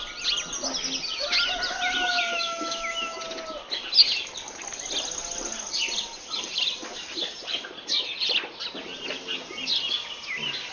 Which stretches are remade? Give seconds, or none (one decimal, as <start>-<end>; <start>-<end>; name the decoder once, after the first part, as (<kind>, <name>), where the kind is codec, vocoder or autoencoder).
2.3-3.2 (autoencoder, DAC-VAE)